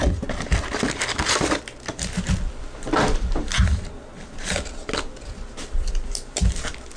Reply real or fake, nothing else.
real